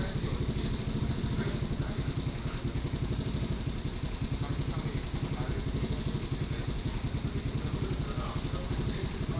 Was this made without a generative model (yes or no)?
yes